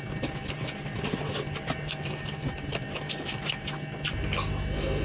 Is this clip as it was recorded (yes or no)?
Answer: yes